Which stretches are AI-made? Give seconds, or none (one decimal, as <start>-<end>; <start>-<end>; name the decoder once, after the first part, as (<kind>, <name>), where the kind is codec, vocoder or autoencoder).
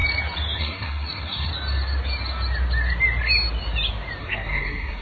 0.6-1.5 (codec, SNAC); 4.2-5.0